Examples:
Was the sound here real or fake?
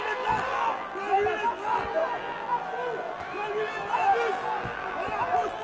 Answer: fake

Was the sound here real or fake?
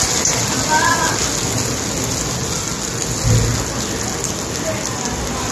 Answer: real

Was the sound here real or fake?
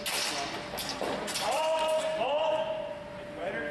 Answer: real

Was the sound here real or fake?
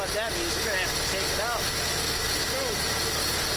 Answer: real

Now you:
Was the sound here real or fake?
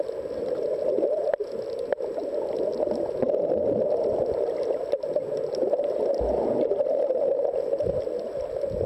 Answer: real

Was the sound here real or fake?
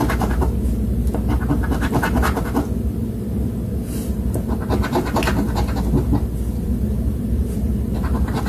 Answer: real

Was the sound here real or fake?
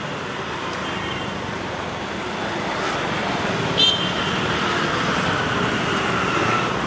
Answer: real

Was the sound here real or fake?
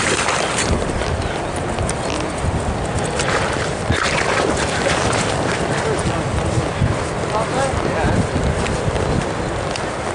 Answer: fake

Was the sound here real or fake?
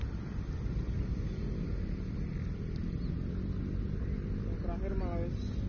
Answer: real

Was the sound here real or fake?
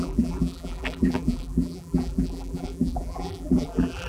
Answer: fake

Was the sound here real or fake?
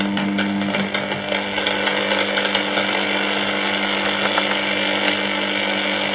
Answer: real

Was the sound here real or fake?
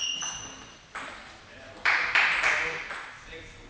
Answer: fake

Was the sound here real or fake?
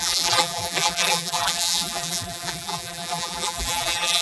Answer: fake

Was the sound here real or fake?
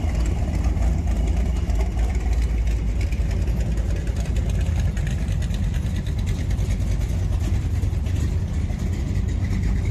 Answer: fake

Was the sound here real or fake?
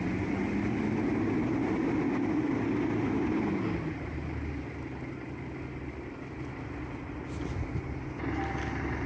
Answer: real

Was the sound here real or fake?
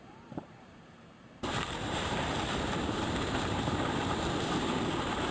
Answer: fake